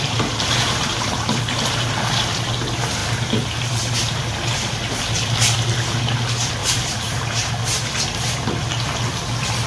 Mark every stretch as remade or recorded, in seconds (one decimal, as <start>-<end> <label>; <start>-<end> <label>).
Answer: 0.0-6.6 recorded; 6.6-7.5 remade; 7.5-9.7 recorded